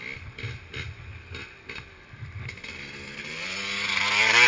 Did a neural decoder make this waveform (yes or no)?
no